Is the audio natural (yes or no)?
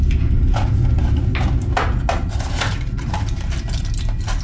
yes